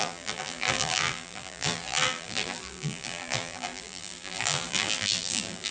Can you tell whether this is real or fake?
fake